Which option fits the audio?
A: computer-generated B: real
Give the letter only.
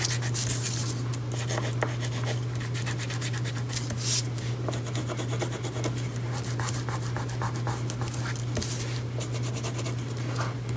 B